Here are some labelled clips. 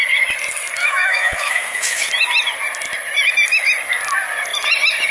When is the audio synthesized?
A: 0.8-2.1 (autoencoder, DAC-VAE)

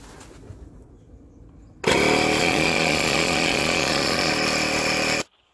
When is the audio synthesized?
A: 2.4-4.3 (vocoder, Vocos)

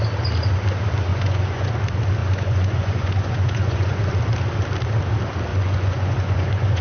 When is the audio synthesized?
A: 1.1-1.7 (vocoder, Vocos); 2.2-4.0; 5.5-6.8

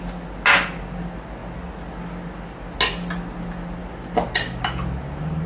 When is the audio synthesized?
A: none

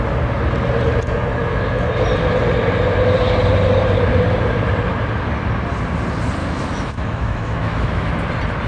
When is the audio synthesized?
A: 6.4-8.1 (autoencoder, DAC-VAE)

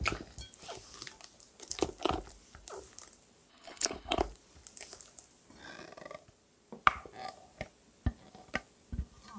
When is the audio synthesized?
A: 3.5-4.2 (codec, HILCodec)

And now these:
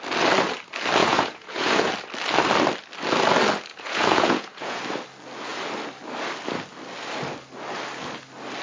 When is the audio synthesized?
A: 1.0-1.9 (vocoder, Vocos); 3.7-4.8